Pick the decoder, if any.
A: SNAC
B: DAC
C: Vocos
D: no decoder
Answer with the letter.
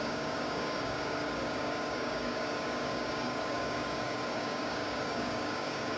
B